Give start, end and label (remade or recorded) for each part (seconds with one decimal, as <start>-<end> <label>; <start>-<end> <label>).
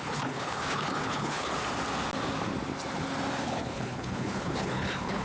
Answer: 0.0-1.5 remade; 1.5-3.4 recorded; 3.4-5.2 remade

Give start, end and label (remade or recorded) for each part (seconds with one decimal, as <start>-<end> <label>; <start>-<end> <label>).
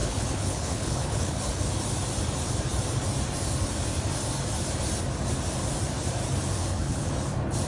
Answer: 0.0-1.6 remade; 1.6-6.6 recorded; 6.6-7.1 remade; 7.1-7.7 recorded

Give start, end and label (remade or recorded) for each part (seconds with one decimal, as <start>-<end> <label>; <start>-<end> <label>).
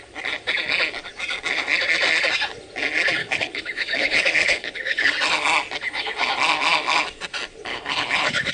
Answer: 0.0-3.2 recorded; 3.2-5.1 remade; 5.1-7.7 recorded; 7.7-8.5 remade